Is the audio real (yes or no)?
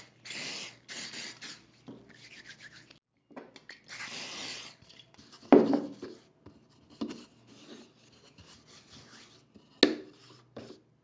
yes